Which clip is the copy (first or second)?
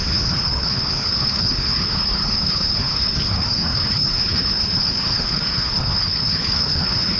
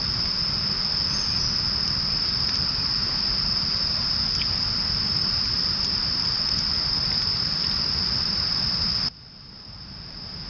first